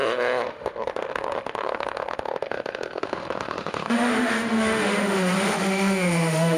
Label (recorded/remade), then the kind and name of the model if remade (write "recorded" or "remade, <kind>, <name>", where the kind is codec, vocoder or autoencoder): remade, autoencoder, DAC-VAE